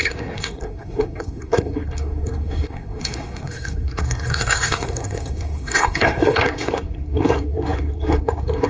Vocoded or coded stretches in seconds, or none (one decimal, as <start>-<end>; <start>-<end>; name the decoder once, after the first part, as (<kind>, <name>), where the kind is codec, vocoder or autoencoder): 0.0-8.7 (codec, SNAC)